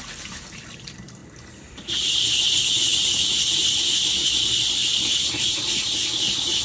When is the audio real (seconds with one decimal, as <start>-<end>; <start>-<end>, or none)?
0.0-6.6